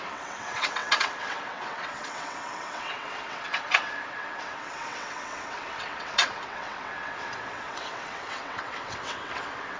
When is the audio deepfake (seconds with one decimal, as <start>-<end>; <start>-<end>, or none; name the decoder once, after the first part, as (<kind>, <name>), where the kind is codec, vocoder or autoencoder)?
0.0-9.8 (vocoder, WaveNeXt)